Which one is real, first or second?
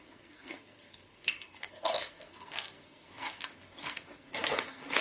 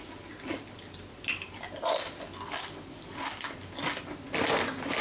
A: second